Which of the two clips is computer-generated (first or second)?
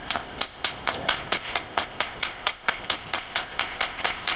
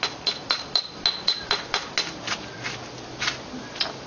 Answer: first